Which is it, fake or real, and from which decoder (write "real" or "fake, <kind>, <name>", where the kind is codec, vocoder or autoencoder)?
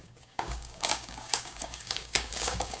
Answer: fake, codec, DAC